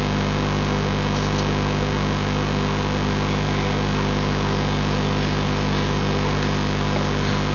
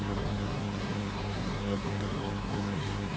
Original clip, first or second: first